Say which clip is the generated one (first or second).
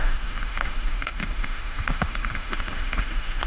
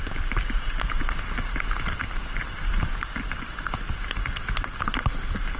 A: first